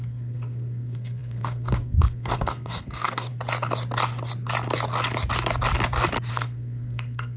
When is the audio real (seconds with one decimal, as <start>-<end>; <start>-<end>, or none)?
3.3-6.3

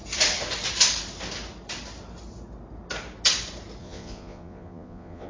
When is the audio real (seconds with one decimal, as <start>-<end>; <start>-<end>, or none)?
0.0-3.8

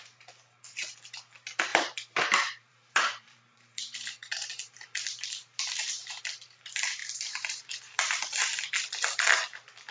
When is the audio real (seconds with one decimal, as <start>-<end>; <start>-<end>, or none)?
0.0-1.7; 4.5-5.4; 6.2-7.0; 7.6-9.9

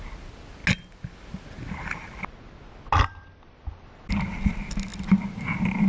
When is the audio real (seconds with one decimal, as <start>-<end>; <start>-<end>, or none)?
0.0-5.9